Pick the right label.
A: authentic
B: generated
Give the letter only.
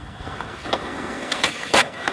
B